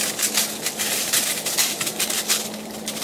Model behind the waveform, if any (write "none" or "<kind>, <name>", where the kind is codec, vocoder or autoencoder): none